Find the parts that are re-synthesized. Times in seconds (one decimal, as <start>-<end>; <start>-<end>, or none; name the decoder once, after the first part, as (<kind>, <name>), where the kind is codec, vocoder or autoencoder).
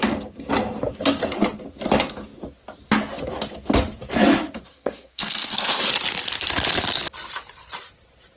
4.7-5.8 (codec, SNAC)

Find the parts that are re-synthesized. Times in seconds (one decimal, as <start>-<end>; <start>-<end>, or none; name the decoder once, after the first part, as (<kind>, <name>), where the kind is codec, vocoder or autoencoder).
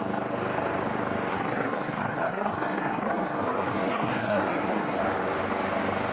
1.3-5.0 (codec, SNAC)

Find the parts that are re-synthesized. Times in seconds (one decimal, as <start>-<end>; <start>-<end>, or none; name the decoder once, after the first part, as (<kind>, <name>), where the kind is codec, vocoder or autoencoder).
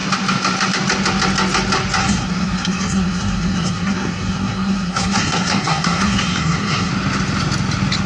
2.0-6.9 (codec, SNAC)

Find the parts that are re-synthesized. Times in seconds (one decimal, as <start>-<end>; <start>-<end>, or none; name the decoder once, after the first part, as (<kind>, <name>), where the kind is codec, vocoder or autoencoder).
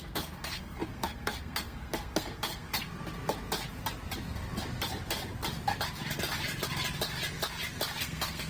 0.0-2.9 (codec, SNAC); 8.0-8.5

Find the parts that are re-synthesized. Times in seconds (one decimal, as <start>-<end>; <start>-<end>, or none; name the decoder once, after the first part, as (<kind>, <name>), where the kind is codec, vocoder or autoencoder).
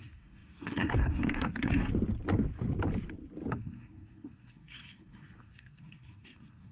0.0-1.9 (codec, SNAC); 3.5-6.7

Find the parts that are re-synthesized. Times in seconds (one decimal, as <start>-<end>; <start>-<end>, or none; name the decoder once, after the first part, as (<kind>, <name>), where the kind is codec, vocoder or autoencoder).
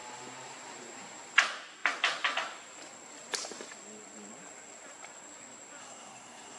5.8-6.6 (codec, SNAC)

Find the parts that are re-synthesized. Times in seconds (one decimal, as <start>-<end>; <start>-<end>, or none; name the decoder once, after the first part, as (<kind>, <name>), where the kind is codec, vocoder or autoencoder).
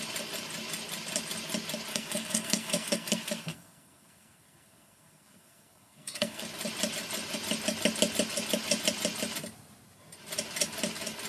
1.9-6.4 (codec, SNAC)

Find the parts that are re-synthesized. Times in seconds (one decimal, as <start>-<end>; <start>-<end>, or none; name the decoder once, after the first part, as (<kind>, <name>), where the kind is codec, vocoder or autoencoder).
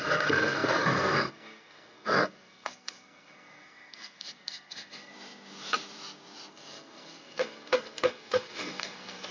0.0-5.1 (codec, SNAC); 6.5-9.3